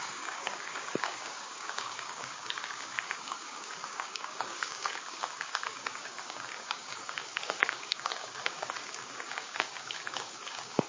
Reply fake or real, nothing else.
fake